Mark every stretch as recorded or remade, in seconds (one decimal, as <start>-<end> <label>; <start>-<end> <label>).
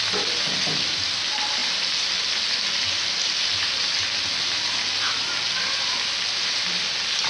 0.0-7.3 recorded